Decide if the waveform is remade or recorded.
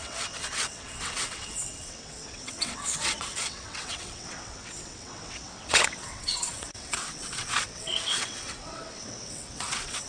remade